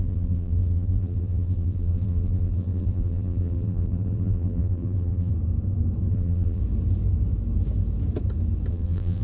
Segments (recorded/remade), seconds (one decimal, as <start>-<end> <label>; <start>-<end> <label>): 0.0-5.3 remade; 5.3-6.1 recorded; 6.1-6.6 remade; 6.6-8.7 recorded; 8.7-9.2 remade